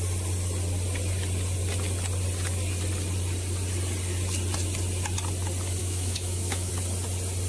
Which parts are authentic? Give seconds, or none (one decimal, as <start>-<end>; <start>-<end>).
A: 0.0-5.8; 6.7-7.5